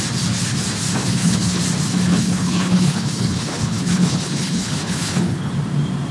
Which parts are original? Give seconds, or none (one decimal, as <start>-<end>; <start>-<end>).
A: 0.0-1.0; 1.6-2.1; 5.5-6.1